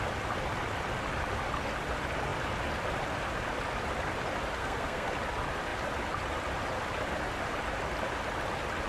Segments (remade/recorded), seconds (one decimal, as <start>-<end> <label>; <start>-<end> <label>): 0.0-4.6 recorded; 4.6-5.1 remade; 5.1-8.9 recorded